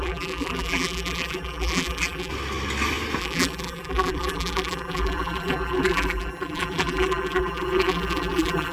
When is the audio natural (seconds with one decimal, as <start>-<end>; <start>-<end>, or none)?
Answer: 2.3-3.2